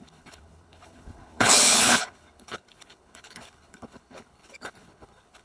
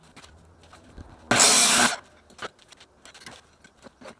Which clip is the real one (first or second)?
second